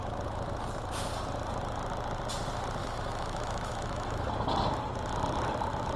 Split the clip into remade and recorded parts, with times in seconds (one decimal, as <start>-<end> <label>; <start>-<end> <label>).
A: 0.0-2.8 recorded; 2.8-4.3 remade; 4.3-6.0 recorded